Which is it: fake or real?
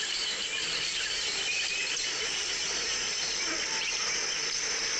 fake